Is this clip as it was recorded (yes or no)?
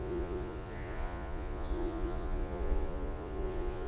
no